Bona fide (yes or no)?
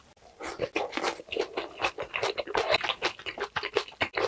yes